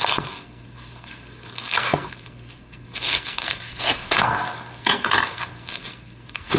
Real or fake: fake